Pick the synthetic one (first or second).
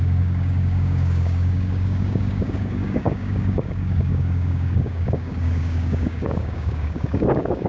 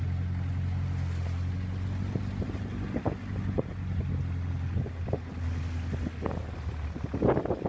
first